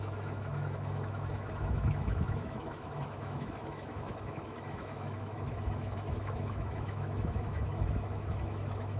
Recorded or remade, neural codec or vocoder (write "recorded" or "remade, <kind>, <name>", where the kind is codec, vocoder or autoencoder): remade, autoencoder, DAC-VAE